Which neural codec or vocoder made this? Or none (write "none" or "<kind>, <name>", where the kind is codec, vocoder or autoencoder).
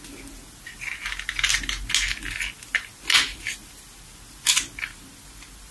none